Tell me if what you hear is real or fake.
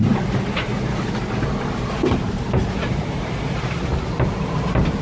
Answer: real